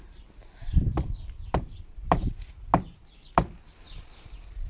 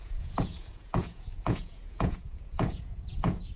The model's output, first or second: second